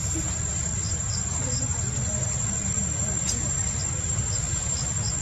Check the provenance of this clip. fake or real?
real